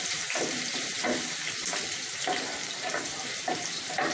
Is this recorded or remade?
remade